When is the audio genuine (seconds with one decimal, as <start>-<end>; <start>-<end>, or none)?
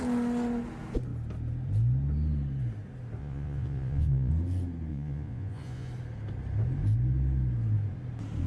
0.0-3.2; 4.3-4.9; 5.9-8.5